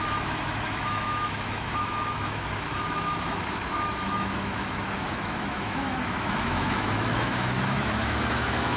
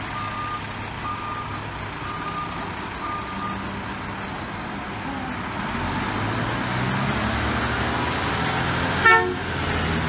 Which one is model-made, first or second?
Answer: first